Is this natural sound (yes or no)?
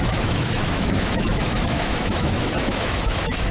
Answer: no